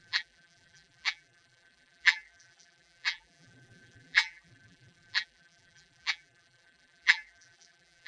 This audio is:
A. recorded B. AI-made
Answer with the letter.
B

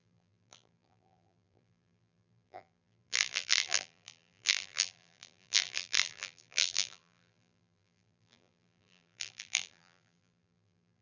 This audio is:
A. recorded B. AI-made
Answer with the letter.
B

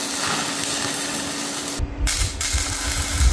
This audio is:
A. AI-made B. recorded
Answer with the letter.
B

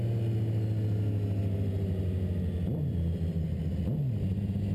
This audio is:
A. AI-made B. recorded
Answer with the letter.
B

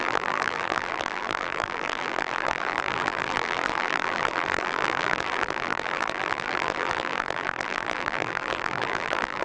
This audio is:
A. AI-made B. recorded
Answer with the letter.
A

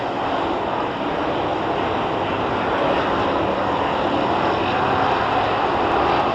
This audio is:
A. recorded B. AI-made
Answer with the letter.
A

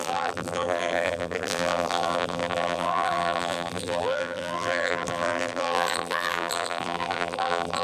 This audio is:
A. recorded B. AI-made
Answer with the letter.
B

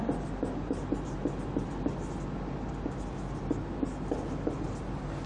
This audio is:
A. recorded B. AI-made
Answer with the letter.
A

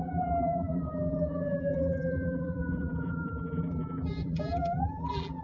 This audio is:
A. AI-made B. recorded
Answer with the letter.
A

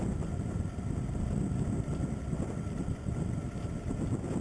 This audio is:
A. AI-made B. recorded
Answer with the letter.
B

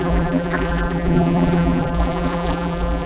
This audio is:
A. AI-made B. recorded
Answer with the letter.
A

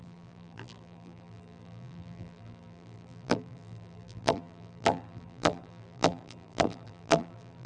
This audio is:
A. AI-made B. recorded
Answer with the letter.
A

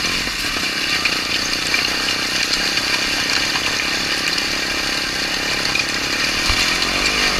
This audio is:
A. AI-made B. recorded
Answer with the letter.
B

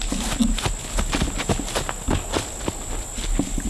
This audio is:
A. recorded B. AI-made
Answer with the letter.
A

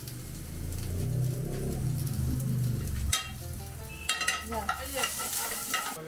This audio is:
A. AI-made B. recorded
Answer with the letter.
B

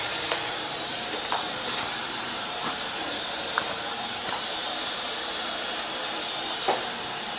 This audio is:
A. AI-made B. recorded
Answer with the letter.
A